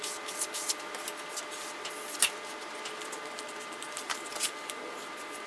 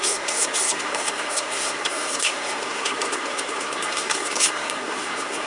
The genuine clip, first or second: first